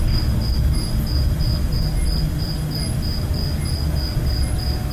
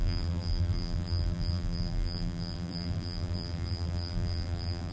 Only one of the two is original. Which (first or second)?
first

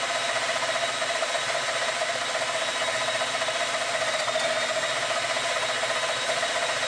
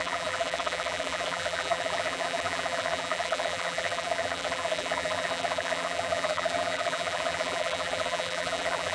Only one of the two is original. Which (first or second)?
first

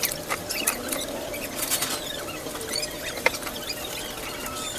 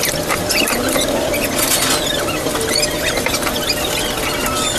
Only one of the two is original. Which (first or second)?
second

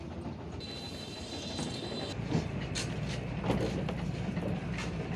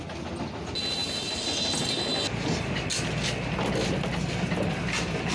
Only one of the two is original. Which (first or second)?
second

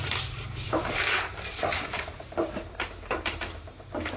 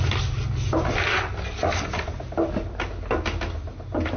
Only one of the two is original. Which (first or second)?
second